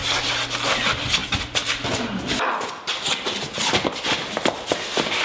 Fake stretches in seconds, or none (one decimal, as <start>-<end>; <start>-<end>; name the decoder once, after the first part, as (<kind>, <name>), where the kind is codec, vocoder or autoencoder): none

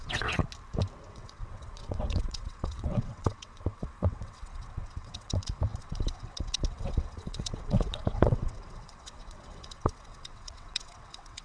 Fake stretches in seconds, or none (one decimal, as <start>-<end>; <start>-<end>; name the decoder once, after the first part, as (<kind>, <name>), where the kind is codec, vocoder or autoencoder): 0.0-0.4 (vocoder, WaveNeXt); 1.1-11.4

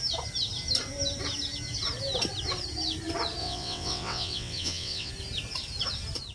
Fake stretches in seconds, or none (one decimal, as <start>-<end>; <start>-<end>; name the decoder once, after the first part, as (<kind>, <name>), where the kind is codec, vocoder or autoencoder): 3.4-5.1 (vocoder, WaveNeXt)

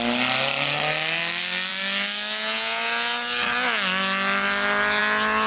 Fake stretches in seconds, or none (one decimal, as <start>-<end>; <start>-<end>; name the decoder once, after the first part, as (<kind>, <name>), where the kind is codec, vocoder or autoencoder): none

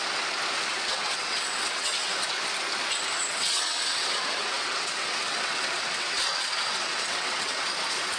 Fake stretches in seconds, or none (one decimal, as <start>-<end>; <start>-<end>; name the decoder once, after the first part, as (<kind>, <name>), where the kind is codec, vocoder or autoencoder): 0.7-2.1 (vocoder, WaveNeXt); 3.3-7.6

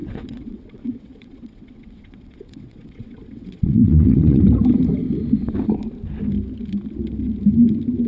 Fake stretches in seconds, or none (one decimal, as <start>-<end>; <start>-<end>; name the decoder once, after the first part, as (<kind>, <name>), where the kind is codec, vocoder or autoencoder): 0.0-4.4 (vocoder, WaveNeXt)

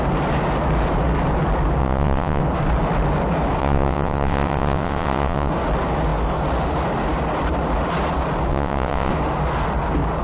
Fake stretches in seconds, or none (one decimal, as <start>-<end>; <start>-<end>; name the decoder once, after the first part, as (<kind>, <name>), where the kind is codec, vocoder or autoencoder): 1.8-2.4 (vocoder, WaveNeXt); 3.6-5.5; 8.5-9.1